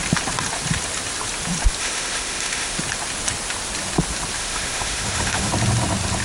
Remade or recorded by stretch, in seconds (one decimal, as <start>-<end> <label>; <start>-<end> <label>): 0.0-1.8 recorded; 1.8-2.8 remade; 2.8-4.4 recorded; 4.4-5.5 remade; 5.5-6.2 recorded